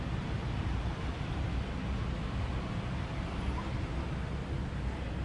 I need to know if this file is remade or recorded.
recorded